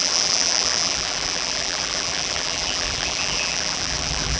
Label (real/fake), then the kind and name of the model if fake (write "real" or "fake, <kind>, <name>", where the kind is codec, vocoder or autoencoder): fake, vocoder, BigVGAN v2